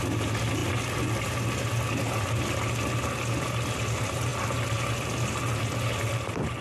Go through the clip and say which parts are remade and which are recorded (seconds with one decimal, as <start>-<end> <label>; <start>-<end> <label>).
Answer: 0.0-6.6 recorded